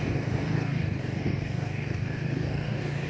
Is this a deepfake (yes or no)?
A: yes